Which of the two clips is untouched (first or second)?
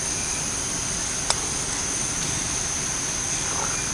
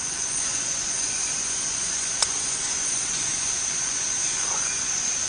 first